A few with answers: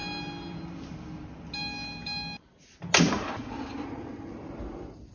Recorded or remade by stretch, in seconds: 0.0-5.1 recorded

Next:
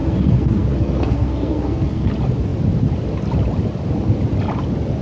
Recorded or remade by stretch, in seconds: 0.0-2.1 remade; 2.1-5.0 recorded

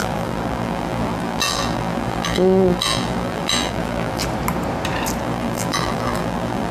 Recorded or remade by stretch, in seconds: 0.0-4.2 remade; 4.2-5.2 recorded; 5.2-6.7 remade

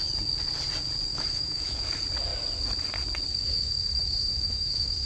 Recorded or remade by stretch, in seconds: 0.0-1.1 recorded; 1.1-1.8 remade; 1.8-3.3 recorded; 3.3-5.1 remade

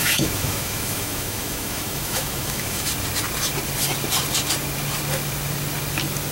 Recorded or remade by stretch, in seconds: 0.0-2.9 remade; 2.9-6.3 recorded

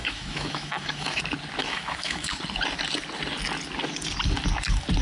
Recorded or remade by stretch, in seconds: 0.0-1.2 remade; 1.2-1.6 recorded; 1.6-2.4 remade; 2.4-5.0 recorded

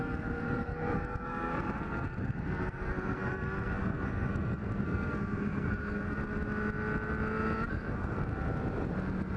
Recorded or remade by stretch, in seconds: 0.0-6.2 remade; 6.2-7.7 recorded; 7.7-8.3 remade; 8.3-9.4 recorded

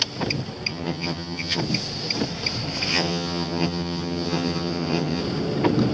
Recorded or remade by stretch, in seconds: 0.0-0.7 recorded; 0.7-1.6 remade; 1.6-2.9 recorded; 2.9-5.2 remade; 5.2-5.9 recorded